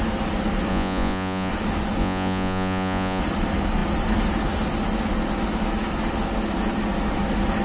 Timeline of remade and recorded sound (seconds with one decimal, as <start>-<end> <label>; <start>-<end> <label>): 0.0-0.7 recorded; 0.7-1.5 remade; 1.5-2.0 recorded; 2.0-3.2 remade; 3.2-7.6 recorded